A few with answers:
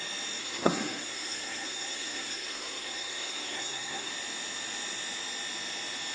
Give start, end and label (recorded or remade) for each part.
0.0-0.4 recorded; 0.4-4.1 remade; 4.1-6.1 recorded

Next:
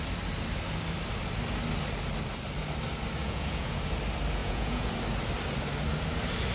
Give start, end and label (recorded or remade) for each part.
0.0-3.2 recorded; 3.2-3.8 remade; 3.8-4.4 recorded; 4.4-4.9 remade; 4.9-6.5 recorded

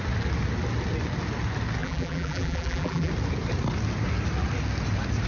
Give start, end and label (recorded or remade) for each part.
0.0-1.8 recorded; 1.8-3.1 remade; 3.1-5.3 recorded

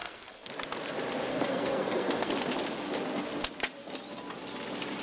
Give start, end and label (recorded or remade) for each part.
0.0-0.5 remade; 0.5-1.3 recorded; 1.3-2.3 remade; 2.3-5.0 recorded

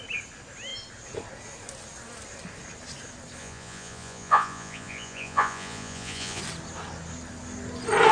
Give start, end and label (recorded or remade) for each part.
0.0-3.4 recorded; 3.4-6.4 remade; 6.4-8.1 recorded

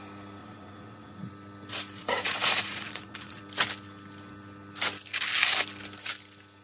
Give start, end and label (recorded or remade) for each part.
0.0-0.4 recorded; 0.4-1.3 remade; 1.3-2.0 recorded; 2.0-3.4 remade; 3.4-6.6 recorded